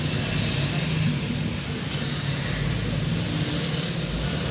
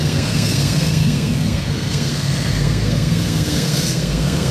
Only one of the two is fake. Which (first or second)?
second